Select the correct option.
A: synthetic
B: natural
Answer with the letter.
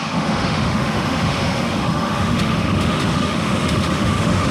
A